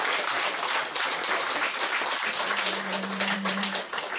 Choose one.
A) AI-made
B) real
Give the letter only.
A